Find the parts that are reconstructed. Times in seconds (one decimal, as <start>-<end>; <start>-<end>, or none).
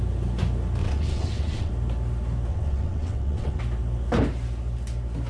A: 0.8-1.7; 2.5-3.6